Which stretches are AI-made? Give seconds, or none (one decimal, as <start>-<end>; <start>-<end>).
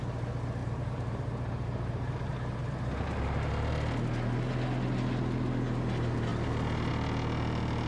0.6-3.7